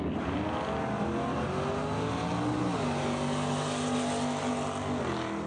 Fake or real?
real